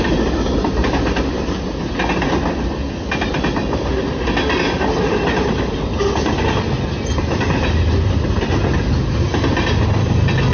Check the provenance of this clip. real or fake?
real